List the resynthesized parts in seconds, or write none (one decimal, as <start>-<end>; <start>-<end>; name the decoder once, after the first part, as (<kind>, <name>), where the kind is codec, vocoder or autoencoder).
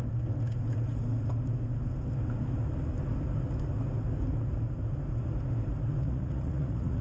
6.0-7.0 (vocoder, Vocos)